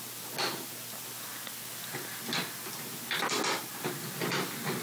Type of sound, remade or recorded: recorded